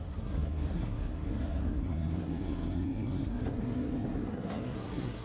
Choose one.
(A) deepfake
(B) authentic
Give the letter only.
A